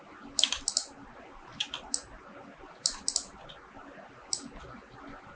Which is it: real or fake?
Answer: real